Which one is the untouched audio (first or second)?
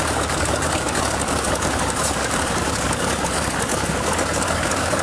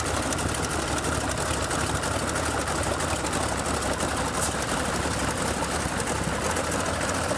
second